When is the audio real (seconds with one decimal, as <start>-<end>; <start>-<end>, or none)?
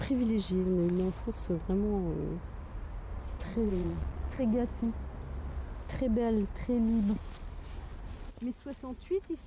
0.0-3.1; 4.4-9.5